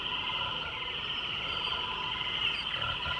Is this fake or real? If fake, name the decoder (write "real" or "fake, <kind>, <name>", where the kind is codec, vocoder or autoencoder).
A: real